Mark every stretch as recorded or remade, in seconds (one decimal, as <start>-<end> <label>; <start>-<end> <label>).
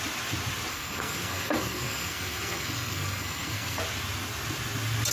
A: 0.0-0.7 recorded; 0.7-3.8 remade; 3.8-5.1 recorded